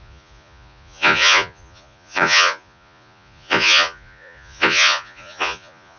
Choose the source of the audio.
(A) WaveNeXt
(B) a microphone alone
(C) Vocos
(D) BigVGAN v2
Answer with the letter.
C